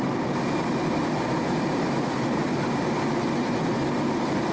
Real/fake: real